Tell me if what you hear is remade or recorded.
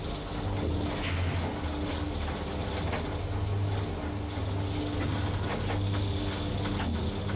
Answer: recorded